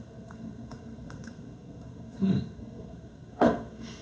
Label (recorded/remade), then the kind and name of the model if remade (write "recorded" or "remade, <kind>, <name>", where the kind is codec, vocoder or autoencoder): remade, codec, SNAC